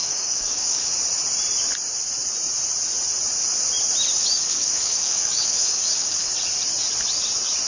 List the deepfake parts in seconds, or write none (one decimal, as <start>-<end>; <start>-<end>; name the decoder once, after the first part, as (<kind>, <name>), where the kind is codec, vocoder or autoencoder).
0.0-0.9 (codec, DAC); 4.2-6.3